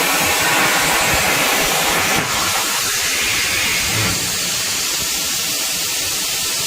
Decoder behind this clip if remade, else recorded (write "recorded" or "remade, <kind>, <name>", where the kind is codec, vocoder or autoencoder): recorded